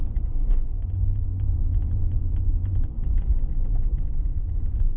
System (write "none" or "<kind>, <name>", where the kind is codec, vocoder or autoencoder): vocoder, Vocos